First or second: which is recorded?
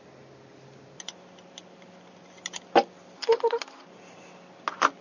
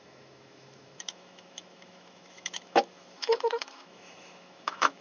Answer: first